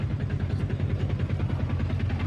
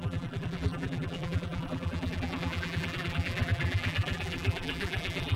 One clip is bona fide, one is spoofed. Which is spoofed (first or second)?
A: second